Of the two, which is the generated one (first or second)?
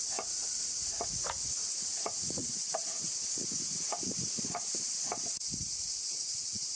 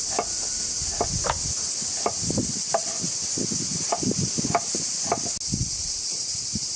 first